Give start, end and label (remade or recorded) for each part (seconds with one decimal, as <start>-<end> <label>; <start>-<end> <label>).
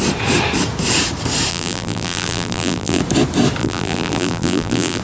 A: 0.0-1.5 recorded; 1.5-3.0 remade; 3.0-3.6 recorded; 3.6-5.0 remade